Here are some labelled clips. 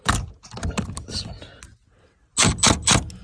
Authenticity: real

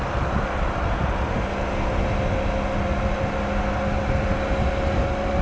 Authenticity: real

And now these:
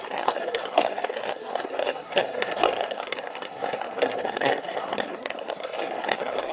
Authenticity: fake